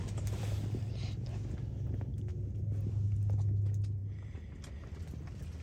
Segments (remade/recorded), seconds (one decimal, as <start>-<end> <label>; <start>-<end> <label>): 0.0-0.9 remade; 0.9-2.3 recorded; 2.3-2.9 remade; 2.9-5.6 recorded